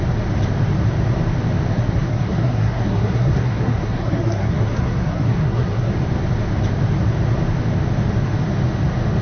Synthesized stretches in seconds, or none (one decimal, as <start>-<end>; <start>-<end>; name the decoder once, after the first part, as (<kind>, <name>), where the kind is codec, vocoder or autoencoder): 1.7-5.9 (codec, SNAC)